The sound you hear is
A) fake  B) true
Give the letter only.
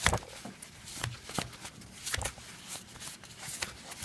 B